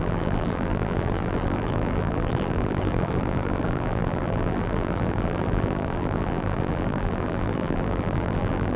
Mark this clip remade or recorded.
remade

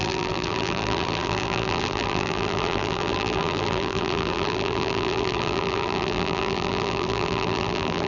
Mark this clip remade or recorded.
remade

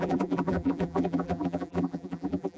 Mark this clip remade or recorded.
remade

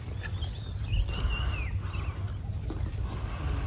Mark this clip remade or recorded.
recorded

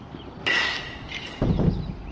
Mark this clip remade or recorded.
recorded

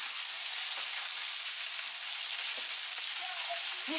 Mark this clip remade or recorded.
recorded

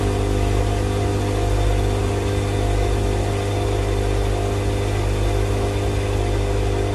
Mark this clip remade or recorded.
recorded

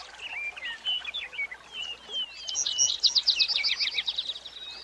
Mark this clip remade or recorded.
recorded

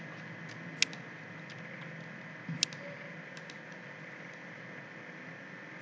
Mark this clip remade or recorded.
recorded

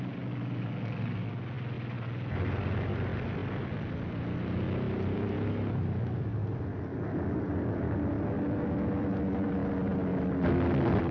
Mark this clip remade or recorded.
recorded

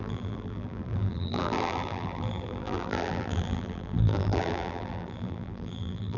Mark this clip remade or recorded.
remade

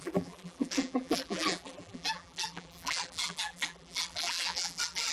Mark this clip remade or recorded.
remade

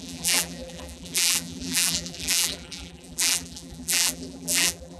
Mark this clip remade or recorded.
remade